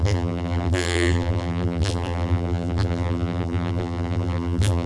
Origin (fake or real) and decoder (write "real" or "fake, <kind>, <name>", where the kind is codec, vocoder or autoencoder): fake, vocoder, BigVGAN v2